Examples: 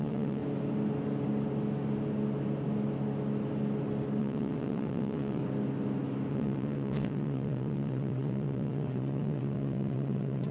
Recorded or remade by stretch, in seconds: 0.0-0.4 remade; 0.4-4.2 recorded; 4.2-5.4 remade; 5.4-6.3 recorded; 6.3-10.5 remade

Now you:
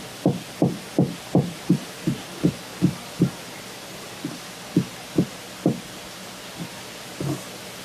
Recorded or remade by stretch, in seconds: 0.0-7.8 recorded